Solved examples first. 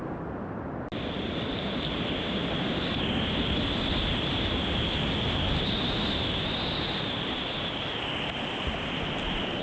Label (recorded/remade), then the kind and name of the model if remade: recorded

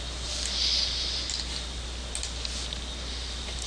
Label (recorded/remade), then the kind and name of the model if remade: recorded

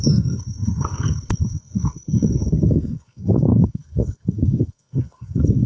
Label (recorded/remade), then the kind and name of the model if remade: remade, codec, SNAC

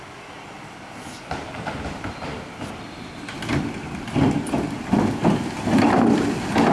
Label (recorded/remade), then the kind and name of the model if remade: recorded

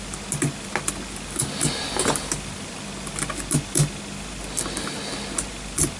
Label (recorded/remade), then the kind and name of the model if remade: recorded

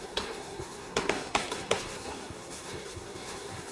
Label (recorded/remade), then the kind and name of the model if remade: remade, codec, SNAC